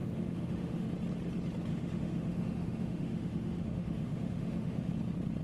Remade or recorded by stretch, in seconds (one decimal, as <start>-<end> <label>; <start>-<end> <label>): 0.0-0.9 remade; 0.9-1.7 recorded; 1.7-4.9 remade; 4.9-5.4 recorded

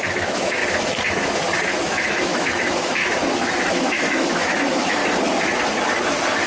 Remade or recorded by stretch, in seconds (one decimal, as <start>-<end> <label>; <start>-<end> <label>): 0.0-0.6 remade; 0.6-1.6 recorded; 1.6-3.0 remade; 3.0-3.7 recorded; 3.7-5.0 remade; 5.0-6.5 recorded

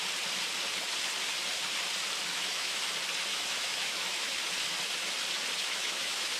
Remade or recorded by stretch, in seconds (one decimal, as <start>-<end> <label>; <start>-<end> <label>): 0.0-2.3 recorded; 2.3-2.8 remade; 2.8-3.3 recorded; 3.3-4.4 remade; 4.4-5.6 recorded; 5.6-6.4 remade